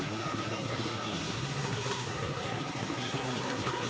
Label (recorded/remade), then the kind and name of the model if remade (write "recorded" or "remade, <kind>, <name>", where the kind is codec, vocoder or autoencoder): remade, codec, SNAC